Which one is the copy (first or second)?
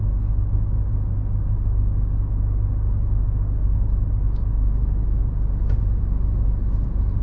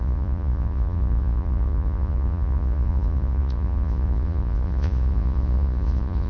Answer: second